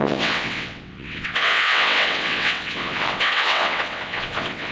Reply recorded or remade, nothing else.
remade